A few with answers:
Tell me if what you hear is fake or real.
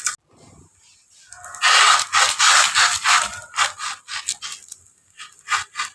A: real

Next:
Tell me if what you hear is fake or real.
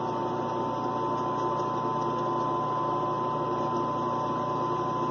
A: real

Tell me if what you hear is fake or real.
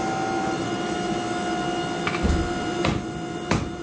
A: real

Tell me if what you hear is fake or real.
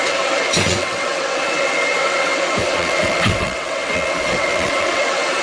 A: fake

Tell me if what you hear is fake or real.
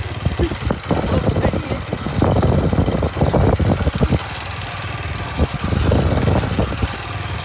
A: real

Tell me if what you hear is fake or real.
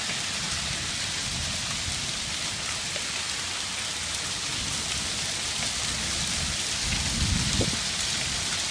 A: real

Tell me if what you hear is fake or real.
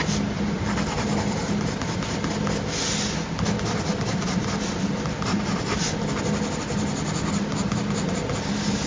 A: real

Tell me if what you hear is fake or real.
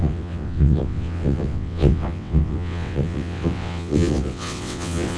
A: fake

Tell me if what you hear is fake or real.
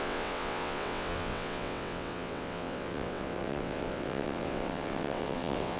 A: fake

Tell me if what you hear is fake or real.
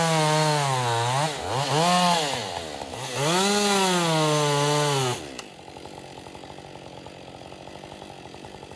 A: real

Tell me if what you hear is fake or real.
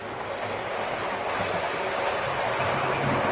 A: real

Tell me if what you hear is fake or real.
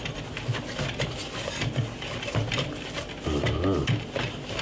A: real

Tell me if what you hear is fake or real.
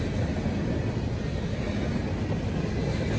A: real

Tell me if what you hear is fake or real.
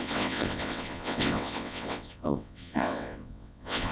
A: fake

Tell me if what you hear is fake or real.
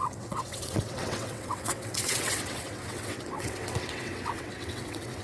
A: fake